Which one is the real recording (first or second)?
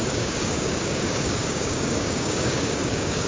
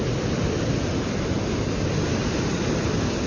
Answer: second